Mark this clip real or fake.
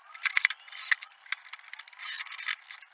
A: real